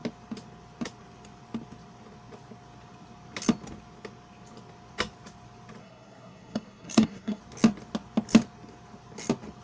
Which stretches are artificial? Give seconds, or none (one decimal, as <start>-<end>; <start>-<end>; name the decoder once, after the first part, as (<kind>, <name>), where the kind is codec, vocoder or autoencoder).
5.8-7.4 (codec, SNAC)